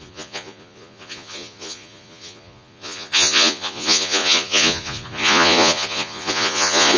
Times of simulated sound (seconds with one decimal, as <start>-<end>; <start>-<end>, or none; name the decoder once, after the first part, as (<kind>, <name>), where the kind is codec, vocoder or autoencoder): 0.0-7.0 (vocoder, Vocos)